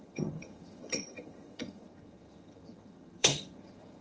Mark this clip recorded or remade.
remade